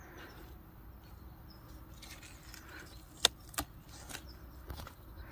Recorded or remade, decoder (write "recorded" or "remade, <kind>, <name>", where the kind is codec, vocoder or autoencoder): recorded